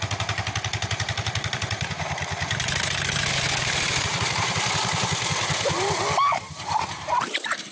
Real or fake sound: fake